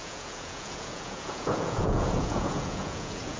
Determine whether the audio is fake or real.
fake